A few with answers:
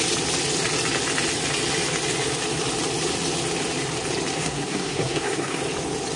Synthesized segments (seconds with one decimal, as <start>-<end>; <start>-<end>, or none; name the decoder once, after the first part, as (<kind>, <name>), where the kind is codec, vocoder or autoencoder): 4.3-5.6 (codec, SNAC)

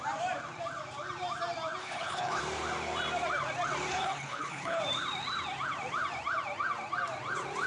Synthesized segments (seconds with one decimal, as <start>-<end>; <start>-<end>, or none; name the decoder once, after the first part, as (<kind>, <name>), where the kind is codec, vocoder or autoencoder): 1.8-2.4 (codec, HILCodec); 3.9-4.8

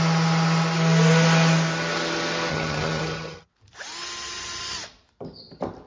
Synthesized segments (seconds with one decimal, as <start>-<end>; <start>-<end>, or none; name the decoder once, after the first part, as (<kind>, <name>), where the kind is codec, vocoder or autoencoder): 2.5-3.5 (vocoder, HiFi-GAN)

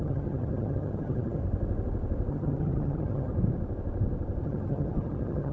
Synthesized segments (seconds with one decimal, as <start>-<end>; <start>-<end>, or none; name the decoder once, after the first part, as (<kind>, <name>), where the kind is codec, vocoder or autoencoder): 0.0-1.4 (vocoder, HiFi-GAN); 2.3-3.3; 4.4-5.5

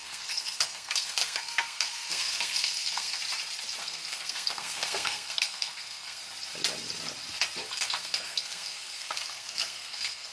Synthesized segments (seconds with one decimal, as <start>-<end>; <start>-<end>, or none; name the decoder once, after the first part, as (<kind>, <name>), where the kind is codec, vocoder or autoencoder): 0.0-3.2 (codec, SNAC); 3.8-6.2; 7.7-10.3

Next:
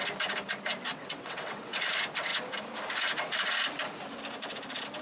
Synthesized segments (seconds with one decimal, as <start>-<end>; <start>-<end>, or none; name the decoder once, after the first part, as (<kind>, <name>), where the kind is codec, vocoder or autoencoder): 0.9-1.9 (vocoder, WaveNeXt)

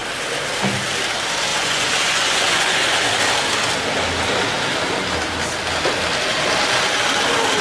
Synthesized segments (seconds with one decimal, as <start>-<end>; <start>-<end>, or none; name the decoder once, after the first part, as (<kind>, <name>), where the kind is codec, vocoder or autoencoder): 1.5-3.1 (vocoder, Vocos)